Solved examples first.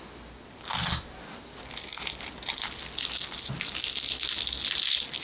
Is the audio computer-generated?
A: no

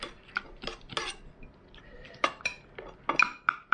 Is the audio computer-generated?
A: no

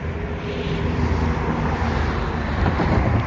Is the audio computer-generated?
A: yes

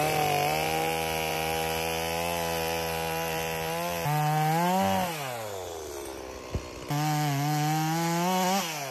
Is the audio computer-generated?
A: no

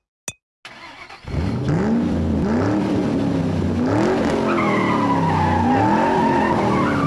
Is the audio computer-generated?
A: no